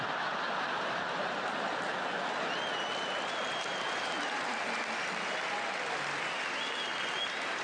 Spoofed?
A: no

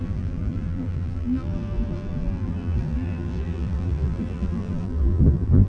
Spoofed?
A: yes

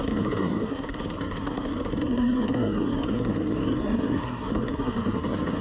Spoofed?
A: yes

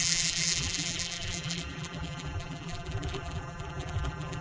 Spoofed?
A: yes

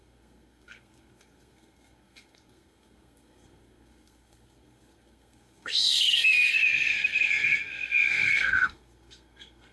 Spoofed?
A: yes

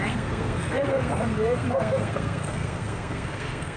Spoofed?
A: yes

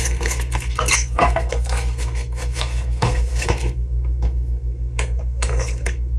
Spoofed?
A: yes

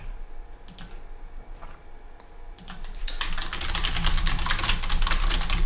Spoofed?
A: no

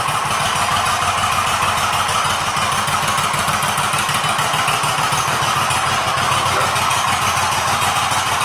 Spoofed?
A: no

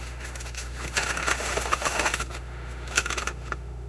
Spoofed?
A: yes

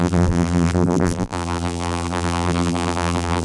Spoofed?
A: yes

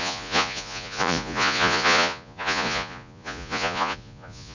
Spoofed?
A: yes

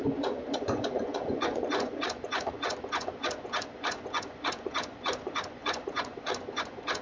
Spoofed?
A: yes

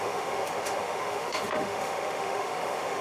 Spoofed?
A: yes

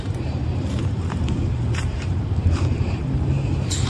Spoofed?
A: yes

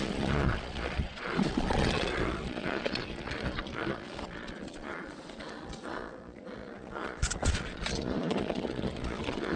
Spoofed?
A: yes